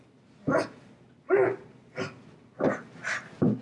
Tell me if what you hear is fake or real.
real